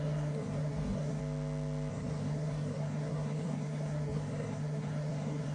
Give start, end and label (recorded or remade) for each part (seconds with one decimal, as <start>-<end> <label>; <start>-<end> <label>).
0.0-1.2 remade; 1.2-1.9 recorded; 1.9-5.5 remade